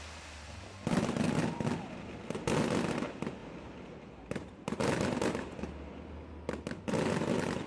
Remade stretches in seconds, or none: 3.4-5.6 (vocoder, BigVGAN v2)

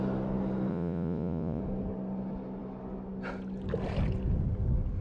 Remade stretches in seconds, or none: 0.7-1.6 (vocoder, Vocos)

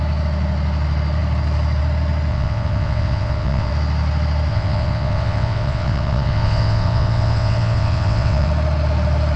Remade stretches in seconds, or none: 2.3-3.7 (vocoder, WaveNeXt); 4.5-8.5

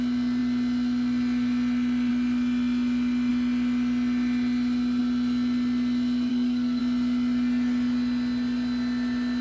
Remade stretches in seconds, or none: 6.3-6.8 (codec, SNAC)

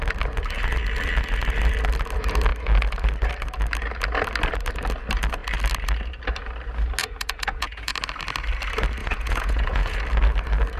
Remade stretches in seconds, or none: 7.0-7.9 (vocoder, Vocos); 9.0-10.0